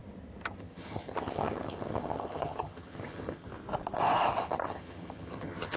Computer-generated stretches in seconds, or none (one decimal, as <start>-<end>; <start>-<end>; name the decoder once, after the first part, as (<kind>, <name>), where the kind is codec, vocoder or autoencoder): 0.6-3.5 (vocoder, HiFi-GAN); 4.4-5.8